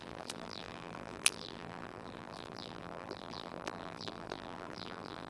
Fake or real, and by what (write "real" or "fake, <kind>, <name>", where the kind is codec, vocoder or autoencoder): fake, vocoder, BigVGAN v2